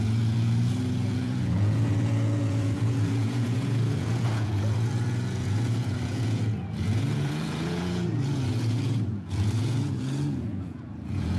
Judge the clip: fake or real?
fake